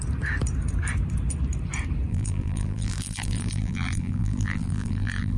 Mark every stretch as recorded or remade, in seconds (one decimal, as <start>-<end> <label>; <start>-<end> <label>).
0.0-2.1 recorded; 2.1-5.4 remade